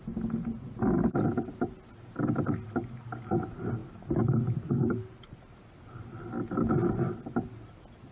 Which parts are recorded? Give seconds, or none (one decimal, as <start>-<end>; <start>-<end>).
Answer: 0.0-8.1